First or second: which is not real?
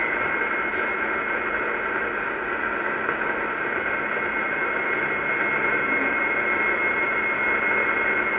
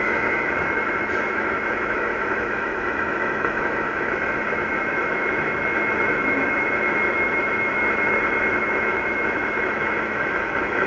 second